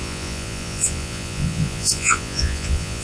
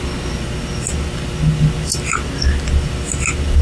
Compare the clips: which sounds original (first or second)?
second